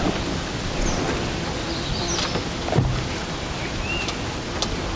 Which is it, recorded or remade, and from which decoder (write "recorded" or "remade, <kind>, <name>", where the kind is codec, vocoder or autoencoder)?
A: recorded